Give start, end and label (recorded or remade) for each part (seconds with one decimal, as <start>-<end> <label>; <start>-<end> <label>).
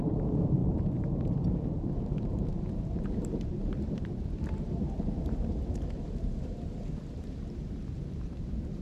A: 0.0-8.8 remade